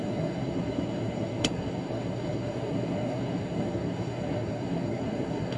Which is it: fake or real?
fake